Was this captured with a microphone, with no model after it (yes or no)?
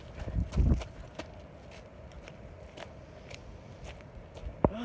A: yes